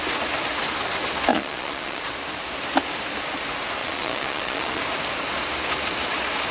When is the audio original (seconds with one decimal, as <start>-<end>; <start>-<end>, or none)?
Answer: 0.0-1.3; 2.1-3.8; 4.8-6.5